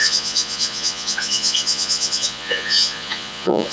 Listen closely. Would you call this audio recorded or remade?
remade